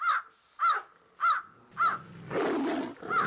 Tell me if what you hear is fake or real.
real